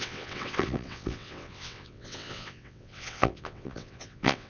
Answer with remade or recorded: remade